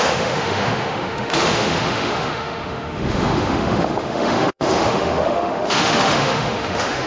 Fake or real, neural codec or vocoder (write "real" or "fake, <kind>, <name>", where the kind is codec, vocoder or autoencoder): fake, autoencoder, DAC-VAE